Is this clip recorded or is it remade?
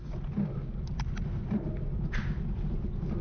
recorded